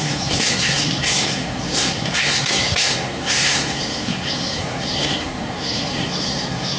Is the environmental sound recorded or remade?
remade